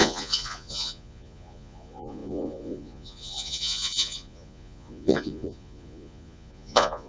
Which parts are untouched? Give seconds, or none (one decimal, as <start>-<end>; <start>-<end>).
none